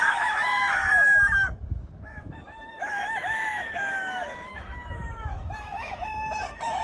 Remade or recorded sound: remade